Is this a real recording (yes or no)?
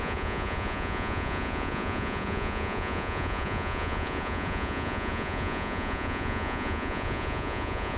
no